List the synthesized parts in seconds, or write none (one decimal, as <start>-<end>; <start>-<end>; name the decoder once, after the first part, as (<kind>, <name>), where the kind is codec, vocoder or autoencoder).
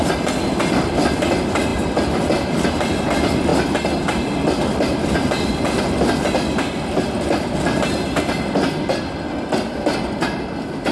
none